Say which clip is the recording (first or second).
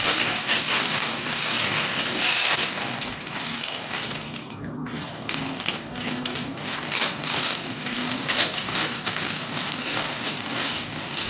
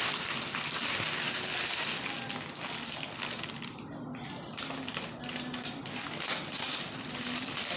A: second